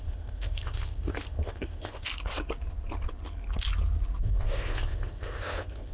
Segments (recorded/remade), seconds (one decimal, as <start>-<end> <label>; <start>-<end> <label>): 0.0-2.1 remade; 2.1-4.2 recorded; 4.2-5.9 remade